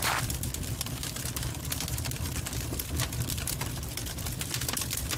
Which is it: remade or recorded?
remade